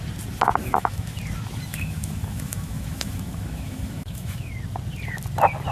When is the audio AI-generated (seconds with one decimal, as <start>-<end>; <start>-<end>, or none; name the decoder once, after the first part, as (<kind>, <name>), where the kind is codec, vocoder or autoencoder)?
0.6-1.2 (autoencoder, DAC-VAE); 1.7-4.5